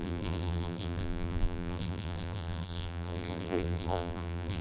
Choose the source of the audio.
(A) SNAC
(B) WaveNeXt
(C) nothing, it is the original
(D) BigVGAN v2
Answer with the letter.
D